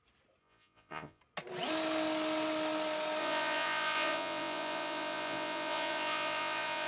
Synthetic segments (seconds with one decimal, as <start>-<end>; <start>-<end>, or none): 0.4-1.2; 3.2-6.9